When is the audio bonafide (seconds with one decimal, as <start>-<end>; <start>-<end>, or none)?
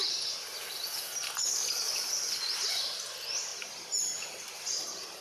0.0-1.4; 2.1-5.2